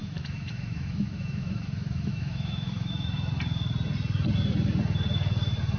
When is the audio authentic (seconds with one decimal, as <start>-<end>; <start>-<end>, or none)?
3.3-5.8